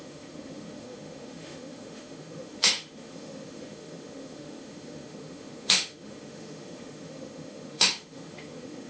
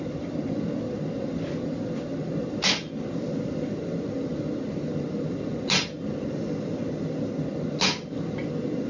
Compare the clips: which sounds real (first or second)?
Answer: second